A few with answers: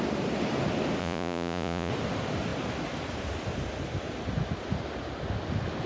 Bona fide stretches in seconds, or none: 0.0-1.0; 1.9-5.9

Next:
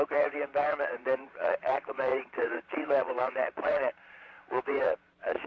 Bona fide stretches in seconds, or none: none

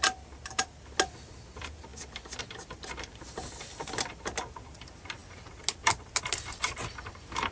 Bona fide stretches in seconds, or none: 0.0-7.5

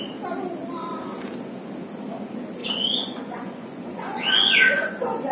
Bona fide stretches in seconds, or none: 0.0-2.6

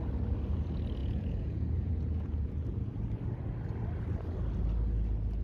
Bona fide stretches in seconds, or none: 0.0-1.0; 2.9-5.4

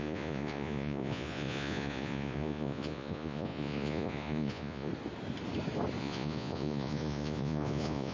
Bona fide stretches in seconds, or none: 4.9-6.0

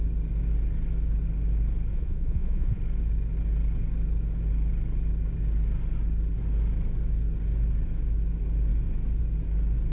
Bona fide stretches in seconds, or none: 0.0-1.9; 2.8-9.9